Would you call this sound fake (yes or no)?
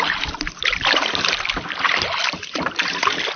no